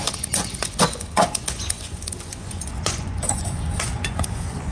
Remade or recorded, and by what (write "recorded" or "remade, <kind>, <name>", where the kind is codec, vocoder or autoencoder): remade, vocoder, Vocos